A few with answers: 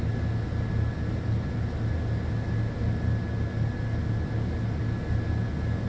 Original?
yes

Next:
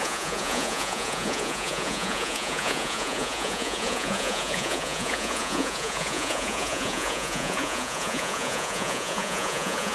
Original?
no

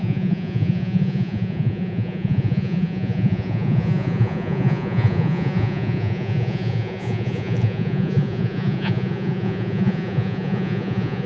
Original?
no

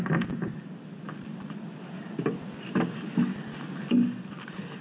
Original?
yes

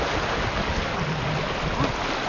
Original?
yes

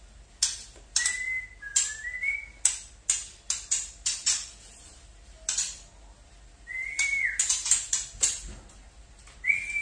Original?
yes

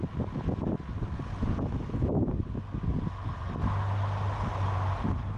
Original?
yes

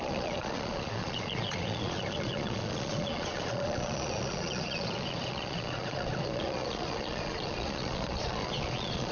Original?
no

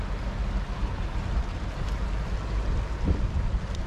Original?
yes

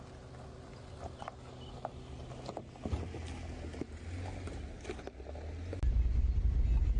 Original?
yes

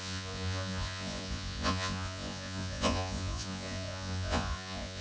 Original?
no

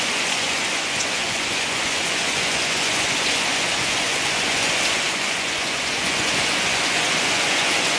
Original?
no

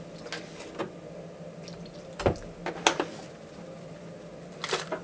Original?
yes